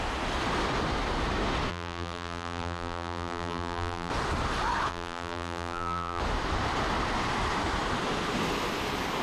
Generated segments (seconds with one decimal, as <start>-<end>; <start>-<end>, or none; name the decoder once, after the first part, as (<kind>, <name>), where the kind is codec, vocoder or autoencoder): 1.7-4.1 (vocoder, BigVGAN v2); 4.9-6.2